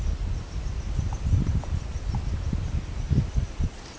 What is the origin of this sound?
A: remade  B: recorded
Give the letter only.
B